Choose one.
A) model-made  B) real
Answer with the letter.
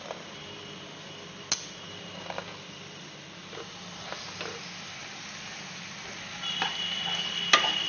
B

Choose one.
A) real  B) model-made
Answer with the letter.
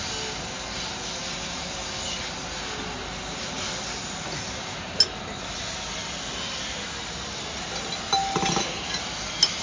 A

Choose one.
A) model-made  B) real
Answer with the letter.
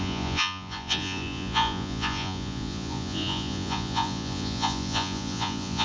A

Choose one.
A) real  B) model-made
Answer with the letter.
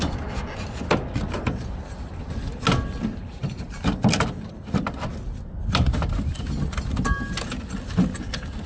A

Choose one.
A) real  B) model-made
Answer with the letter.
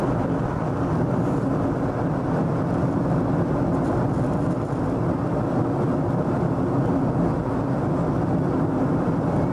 A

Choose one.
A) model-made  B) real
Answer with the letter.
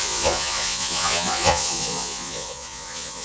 A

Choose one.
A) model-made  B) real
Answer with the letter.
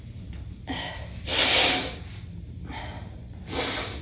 B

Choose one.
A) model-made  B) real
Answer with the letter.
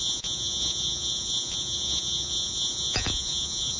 A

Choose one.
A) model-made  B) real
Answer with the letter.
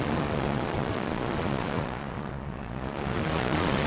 A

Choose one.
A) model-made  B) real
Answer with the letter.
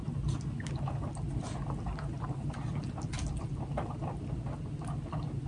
B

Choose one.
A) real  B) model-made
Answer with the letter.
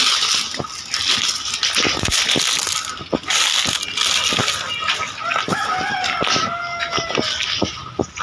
A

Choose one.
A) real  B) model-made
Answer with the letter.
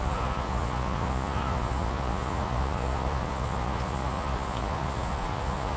B